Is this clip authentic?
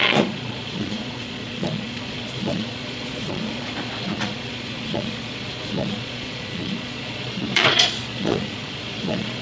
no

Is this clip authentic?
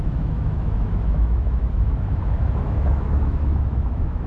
no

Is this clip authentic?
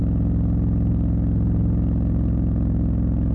yes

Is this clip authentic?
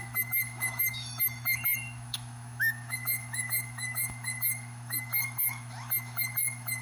no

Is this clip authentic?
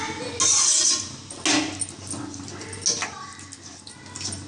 yes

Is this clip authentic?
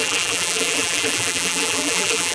no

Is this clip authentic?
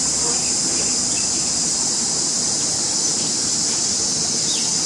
yes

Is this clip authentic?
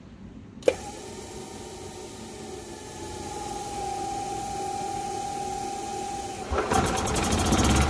yes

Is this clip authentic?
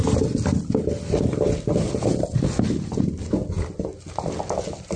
yes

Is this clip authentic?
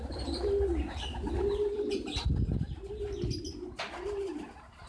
yes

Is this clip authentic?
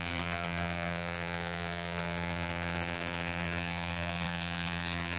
no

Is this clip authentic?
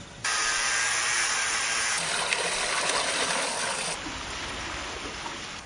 yes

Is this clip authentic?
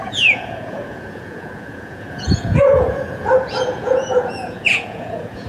no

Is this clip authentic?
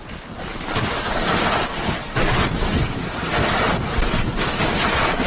yes